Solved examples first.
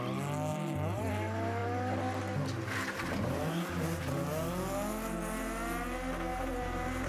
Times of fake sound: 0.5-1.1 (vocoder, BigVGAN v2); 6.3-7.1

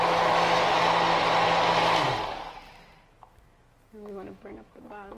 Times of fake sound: 3.1-5.2 (autoencoder, DAC-VAE)

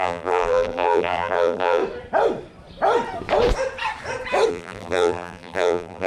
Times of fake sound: 0.0-1.8 (vocoder, BigVGAN v2); 4.5-6.1

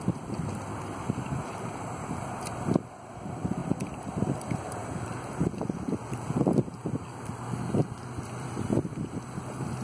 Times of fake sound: 0.0-4.8 (vocoder, BigVGAN v2); 8.2-9.8

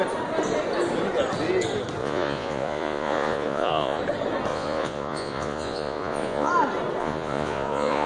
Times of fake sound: 2.0-4.0 (vocoder, Vocos); 4.5-6.5; 7.0-8.1

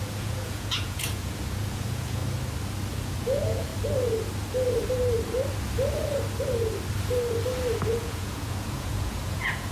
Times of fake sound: 0.0-2.2 (vocoder, Vocos); 2.9-3.7; 7.9-9.7